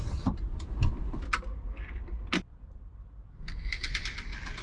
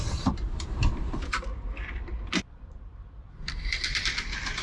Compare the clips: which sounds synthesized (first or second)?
second